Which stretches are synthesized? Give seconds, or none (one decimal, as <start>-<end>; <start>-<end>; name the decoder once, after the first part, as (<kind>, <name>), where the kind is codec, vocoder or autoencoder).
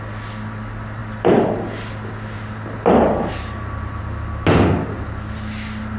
none